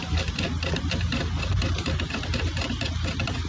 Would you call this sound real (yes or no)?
yes